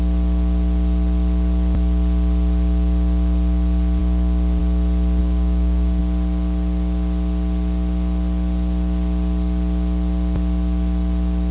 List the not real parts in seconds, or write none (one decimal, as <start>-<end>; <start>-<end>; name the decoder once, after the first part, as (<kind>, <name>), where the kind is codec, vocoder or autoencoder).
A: 5.2-6.0 (codec, DAC)